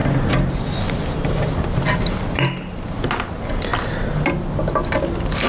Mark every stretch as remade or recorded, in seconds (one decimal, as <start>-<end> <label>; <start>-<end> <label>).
0.0-5.5 recorded